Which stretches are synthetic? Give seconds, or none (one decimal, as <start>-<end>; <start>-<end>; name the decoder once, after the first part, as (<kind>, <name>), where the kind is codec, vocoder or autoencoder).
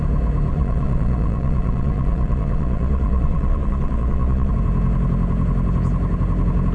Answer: 0.5-4.5 (vocoder, Vocos)